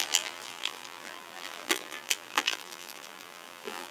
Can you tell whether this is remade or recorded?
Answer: remade